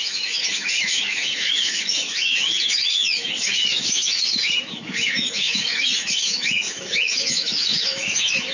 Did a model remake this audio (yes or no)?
yes